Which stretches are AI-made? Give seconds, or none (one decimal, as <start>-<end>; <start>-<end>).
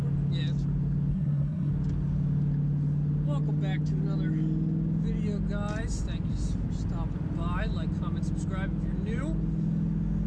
1.1-1.7